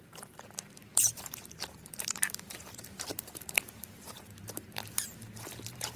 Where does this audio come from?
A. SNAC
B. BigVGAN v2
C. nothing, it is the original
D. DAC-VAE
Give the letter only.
B